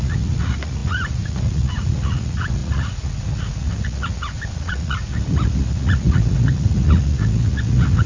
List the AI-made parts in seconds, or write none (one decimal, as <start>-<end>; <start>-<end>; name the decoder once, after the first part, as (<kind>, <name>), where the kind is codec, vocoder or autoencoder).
0.0-8.1 (vocoder, Vocos)